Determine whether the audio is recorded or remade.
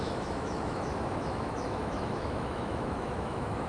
remade